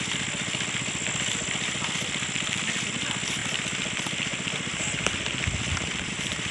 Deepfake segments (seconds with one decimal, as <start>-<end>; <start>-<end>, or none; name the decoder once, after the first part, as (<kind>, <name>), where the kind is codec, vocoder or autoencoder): 0.0-6.5 (vocoder, BigVGAN v2)